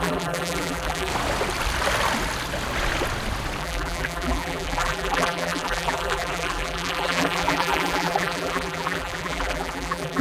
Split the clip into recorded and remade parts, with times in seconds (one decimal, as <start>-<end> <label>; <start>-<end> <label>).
0.0-1.1 remade; 1.1-3.6 recorded; 3.6-10.2 remade